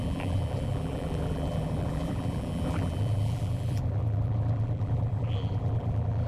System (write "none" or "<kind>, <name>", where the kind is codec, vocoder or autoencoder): vocoder, BigVGAN v2